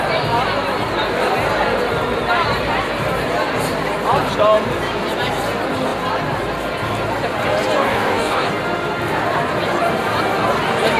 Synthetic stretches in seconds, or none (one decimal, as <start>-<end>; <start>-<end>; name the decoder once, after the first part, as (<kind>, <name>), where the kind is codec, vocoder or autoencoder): 7.8-8.5 (codec, DAC)